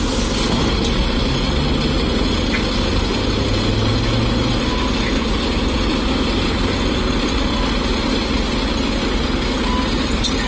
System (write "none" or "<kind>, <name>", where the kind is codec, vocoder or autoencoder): none